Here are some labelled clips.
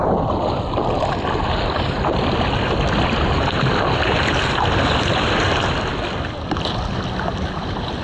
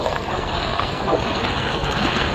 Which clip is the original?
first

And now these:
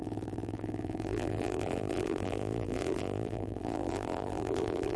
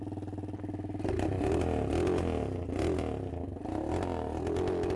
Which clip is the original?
second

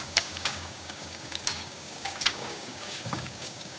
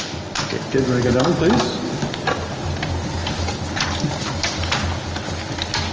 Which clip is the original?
second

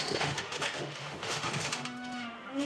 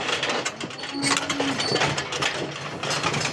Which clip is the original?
second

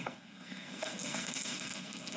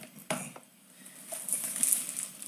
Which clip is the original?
second